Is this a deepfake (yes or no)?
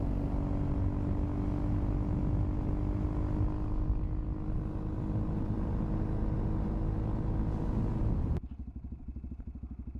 no